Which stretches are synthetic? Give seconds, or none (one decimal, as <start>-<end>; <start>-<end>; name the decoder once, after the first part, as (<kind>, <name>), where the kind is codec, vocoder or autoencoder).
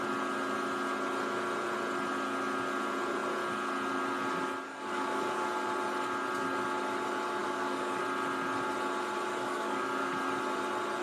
4.7-5.5 (codec, DAC); 7.4-8.0; 9.3-10.1